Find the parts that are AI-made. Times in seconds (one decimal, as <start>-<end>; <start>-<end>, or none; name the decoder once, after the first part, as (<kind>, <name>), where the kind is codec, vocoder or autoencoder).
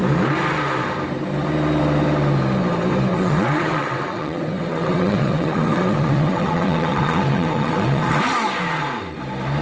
3.1-8.2 (vocoder, WaveNeXt)